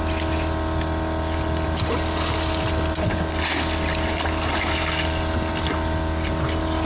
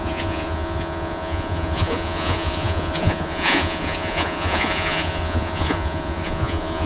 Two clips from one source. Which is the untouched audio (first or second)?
first